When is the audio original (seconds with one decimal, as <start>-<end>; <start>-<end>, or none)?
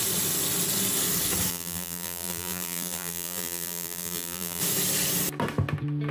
0.0-1.5; 4.6-6.1